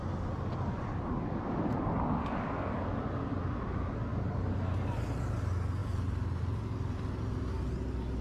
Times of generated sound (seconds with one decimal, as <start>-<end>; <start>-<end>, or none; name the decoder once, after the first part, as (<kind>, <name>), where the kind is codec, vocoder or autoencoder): none